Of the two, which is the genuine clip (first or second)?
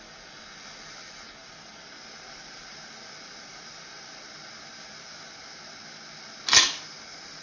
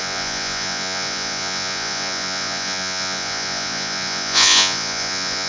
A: first